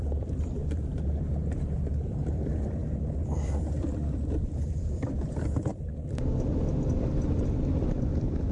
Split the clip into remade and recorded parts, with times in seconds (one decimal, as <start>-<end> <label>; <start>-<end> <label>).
0.0-8.5 remade